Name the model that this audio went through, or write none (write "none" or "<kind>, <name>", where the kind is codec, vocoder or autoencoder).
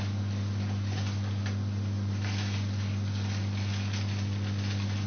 none